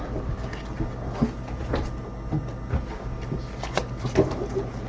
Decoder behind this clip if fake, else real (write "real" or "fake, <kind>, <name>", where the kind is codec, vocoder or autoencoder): real